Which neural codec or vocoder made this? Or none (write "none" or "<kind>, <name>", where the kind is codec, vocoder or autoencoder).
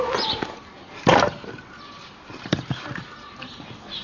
none